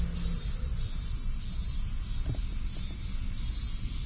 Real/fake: real